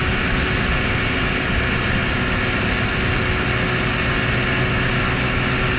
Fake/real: real